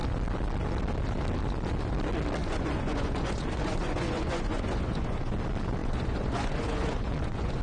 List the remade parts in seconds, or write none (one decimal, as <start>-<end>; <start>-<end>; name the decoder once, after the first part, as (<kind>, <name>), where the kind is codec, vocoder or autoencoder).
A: 2.4-5.3 (vocoder, Vocos); 5.8-7.6